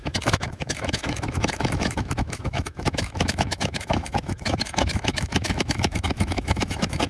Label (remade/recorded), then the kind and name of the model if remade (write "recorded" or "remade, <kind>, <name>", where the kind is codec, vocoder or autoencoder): remade, autoencoder, DAC-VAE